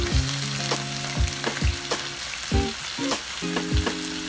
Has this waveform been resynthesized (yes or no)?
no